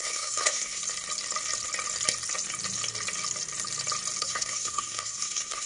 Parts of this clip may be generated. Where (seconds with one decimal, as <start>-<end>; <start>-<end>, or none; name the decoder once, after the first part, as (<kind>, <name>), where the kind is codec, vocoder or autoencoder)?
0.0-0.8 (codec, SNAC); 4.2-5.7